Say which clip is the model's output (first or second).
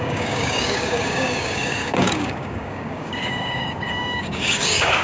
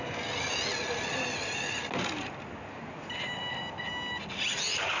first